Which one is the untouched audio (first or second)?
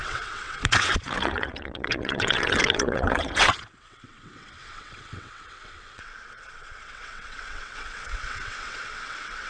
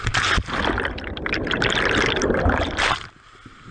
second